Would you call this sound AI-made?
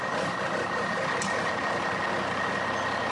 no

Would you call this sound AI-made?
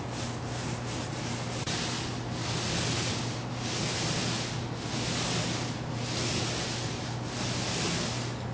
no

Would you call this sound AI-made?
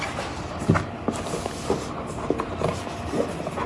no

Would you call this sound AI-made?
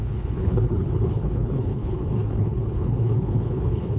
yes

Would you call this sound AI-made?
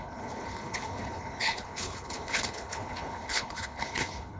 yes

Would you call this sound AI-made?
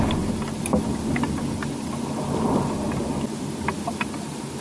no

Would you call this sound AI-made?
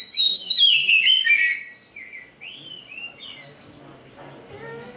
no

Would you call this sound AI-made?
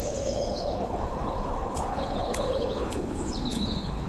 yes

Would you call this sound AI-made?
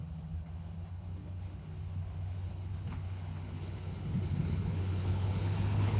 yes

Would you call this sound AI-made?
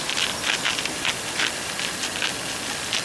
no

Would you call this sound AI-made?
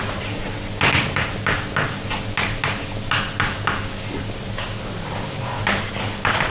no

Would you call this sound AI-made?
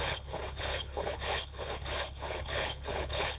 yes